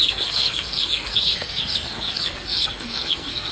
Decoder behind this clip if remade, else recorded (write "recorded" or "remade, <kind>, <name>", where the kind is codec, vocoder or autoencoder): remade, codec, SNAC